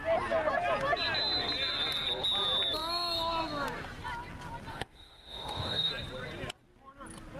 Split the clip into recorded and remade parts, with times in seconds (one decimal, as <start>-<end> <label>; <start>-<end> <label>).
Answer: 0.0-4.7 recorded; 4.7-5.9 remade; 5.9-7.4 recorded